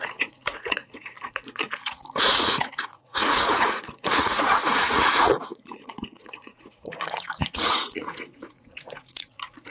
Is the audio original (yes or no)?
no